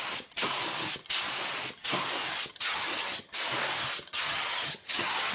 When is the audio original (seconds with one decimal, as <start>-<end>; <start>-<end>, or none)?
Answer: 0.0-2.5; 3.3-4.1